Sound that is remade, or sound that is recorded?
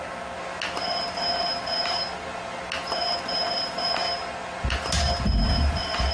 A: recorded